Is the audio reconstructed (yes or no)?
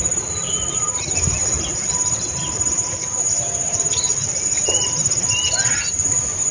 no